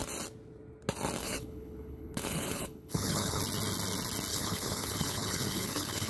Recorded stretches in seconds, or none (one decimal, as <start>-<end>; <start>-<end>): 0.0-1.2; 3.4-4.3